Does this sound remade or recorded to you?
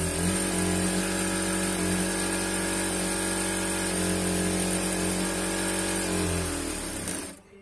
recorded